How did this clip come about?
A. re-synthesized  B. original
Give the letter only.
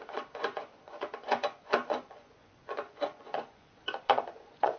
A